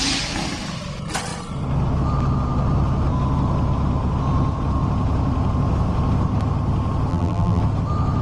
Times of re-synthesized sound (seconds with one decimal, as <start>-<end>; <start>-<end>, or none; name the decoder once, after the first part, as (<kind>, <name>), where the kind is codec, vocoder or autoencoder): 7.1-7.6 (vocoder, BigVGAN v2)